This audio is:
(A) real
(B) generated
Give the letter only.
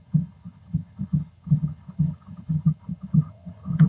B